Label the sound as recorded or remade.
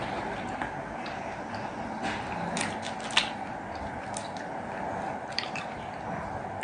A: recorded